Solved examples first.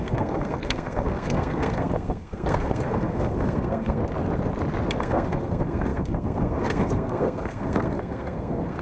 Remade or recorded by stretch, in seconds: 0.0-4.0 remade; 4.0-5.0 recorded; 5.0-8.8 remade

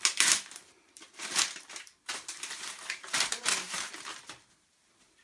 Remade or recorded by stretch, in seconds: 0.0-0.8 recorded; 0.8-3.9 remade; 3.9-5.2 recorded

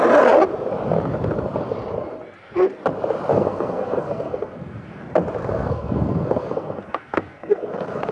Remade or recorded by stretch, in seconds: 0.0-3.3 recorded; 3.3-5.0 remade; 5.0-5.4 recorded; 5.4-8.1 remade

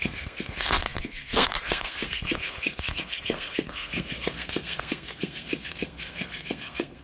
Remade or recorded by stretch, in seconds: 0.0-7.0 remade